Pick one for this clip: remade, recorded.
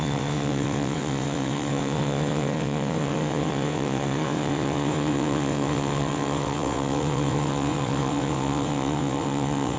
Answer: remade